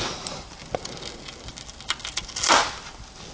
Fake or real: real